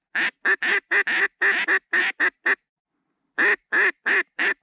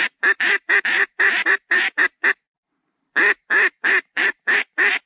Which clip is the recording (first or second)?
first